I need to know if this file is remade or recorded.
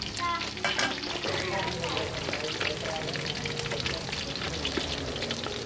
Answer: recorded